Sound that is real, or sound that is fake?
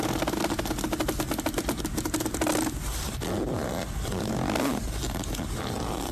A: real